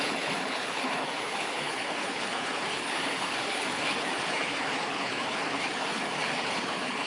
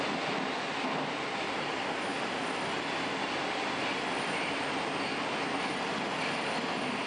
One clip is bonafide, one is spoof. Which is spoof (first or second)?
first